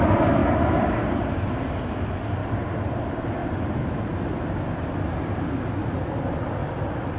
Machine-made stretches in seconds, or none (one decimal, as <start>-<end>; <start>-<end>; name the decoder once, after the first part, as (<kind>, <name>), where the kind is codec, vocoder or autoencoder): 0.4-1.3 (vocoder, BigVGAN v2); 2.4-3.0; 3.4-4.3